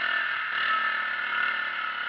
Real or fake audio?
real